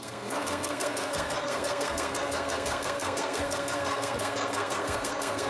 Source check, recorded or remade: remade